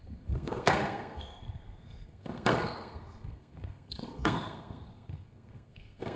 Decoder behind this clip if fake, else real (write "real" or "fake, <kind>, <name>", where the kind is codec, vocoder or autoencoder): fake, codec, SNAC